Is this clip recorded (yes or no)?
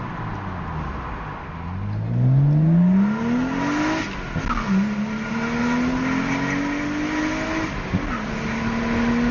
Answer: yes